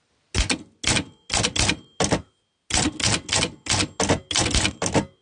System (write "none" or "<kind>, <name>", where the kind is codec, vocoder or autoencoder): none